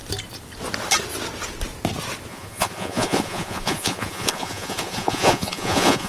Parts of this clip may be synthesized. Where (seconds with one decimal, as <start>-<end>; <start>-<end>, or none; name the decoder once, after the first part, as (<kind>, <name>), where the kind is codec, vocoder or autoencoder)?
2.3-6.1 (vocoder, Vocos)

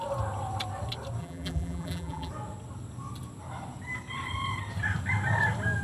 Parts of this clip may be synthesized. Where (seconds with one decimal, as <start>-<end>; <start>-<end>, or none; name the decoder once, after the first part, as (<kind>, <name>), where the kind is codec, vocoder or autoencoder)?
1.2-2.3 (vocoder, BigVGAN v2)

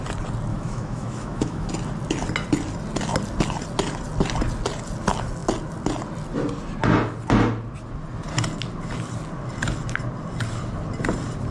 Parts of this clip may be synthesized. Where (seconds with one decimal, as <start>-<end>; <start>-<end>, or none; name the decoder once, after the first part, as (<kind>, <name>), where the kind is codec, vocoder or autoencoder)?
0.5-1.7 (autoencoder, DAC-VAE)

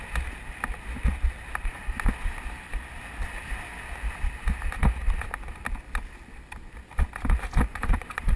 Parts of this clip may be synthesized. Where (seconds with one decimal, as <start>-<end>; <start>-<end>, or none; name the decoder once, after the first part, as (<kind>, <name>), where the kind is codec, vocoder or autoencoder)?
7.7-8.4 (vocoder, Vocos)

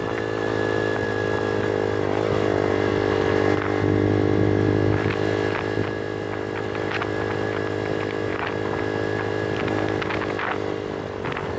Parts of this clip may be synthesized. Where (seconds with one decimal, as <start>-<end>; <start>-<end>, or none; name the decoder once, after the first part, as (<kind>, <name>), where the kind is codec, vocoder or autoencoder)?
none